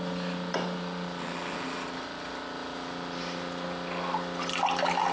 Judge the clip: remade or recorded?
recorded